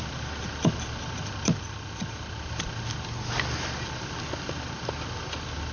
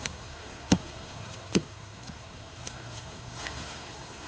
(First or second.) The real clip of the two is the first